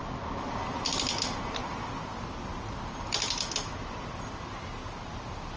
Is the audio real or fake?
real